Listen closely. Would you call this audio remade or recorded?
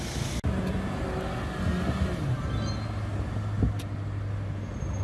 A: recorded